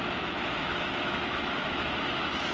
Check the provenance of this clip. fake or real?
fake